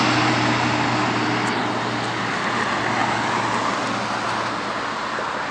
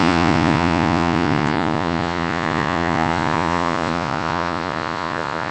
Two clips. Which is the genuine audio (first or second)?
first